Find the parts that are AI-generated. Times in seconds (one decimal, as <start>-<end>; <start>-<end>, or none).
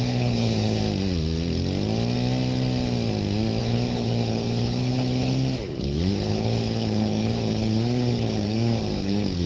0.0-0.8; 3.6-9.5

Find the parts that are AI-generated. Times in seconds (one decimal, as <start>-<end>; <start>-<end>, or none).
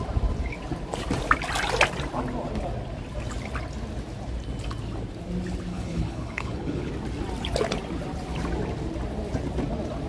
5.7-6.9